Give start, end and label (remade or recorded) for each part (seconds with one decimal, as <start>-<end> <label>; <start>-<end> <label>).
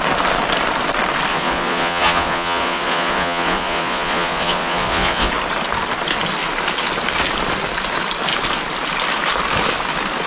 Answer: 0.0-1.3 recorded; 1.3-5.3 remade; 5.3-10.3 recorded